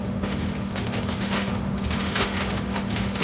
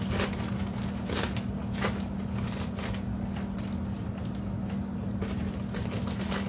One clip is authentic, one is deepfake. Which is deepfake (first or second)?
first